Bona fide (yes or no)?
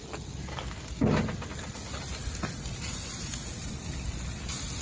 yes